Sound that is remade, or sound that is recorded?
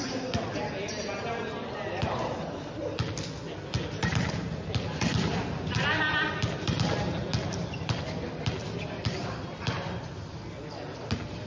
recorded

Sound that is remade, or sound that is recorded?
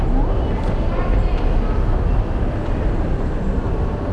recorded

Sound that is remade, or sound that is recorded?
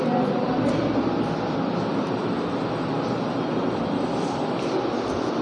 recorded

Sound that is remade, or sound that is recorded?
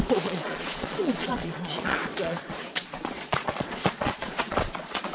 remade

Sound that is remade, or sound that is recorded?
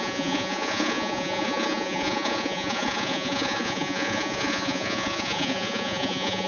remade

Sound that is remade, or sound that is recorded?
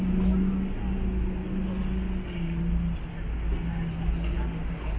recorded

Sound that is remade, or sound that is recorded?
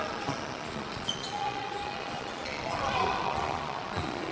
remade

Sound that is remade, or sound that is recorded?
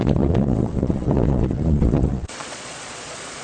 remade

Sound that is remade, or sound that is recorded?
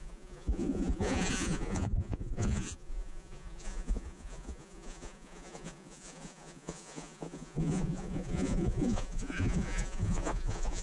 remade